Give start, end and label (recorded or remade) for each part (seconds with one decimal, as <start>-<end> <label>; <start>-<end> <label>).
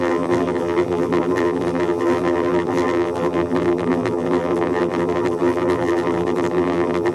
0.0-7.1 remade